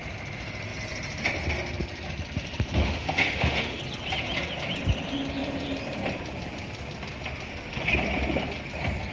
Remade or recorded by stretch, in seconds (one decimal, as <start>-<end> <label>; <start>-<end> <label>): 0.0-2.8 recorded; 2.8-3.8 remade; 3.8-9.1 recorded